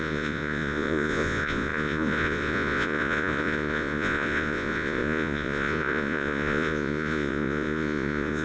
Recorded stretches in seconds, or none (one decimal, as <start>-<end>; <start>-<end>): none